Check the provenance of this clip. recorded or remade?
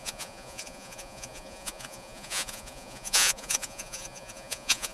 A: remade